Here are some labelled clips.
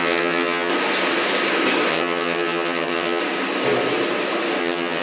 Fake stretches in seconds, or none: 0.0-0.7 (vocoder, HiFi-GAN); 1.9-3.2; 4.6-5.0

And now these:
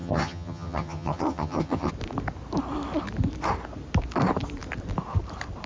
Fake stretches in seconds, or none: 0.0-1.9 (vocoder, HiFi-GAN)

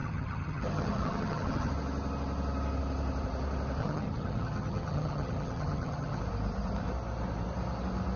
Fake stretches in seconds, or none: 0.0-1.7 (vocoder, HiFi-GAN); 3.8-6.2

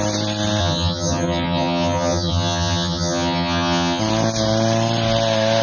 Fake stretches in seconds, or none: 0.6-4.0 (vocoder, HiFi-GAN)